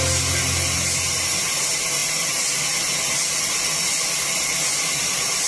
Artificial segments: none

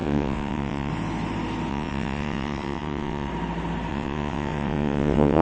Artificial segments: 0.0-0.9; 1.7-3.3; 3.9-5.4

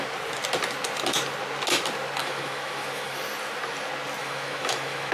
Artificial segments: 2.2-3.2; 4.2-5.1

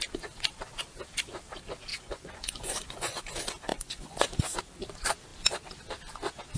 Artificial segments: 1.9-3.2; 3.7-4.3

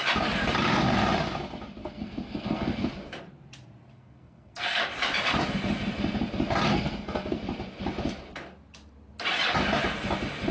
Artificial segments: 1.8-2.9; 3.9-4.8; 6.7-7.4

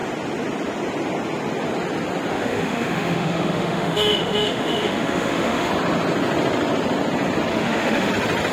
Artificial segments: 2.3-5.7; 7.5-8.1

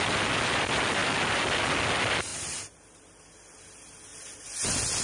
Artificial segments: 2.3-3.1